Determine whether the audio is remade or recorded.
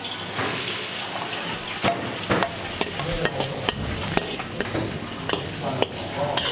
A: recorded